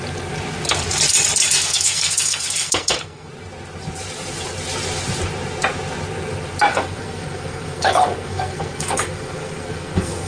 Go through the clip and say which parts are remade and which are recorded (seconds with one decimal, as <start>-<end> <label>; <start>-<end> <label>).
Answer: 0.0-1.6 recorded; 1.6-3.3 remade; 3.3-6.7 recorded; 6.7-10.3 remade